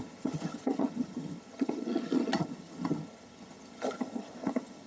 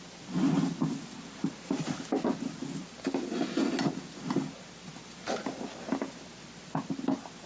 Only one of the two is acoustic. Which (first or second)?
second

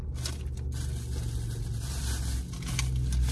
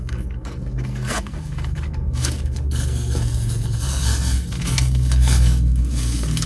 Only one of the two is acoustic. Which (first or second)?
first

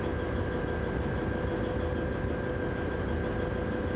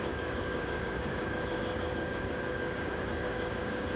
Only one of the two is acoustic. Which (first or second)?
first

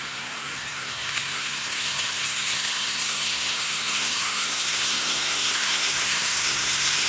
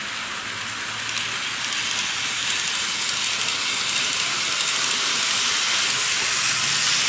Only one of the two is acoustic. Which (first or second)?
second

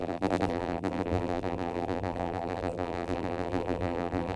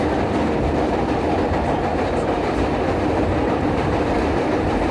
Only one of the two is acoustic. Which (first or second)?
second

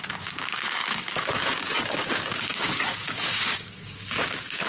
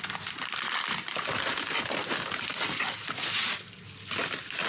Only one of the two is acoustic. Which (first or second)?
second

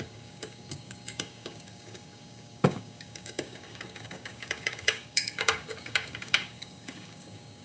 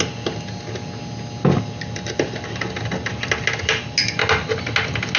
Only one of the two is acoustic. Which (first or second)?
second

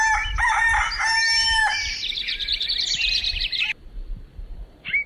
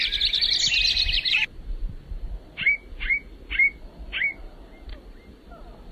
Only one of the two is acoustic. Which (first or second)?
second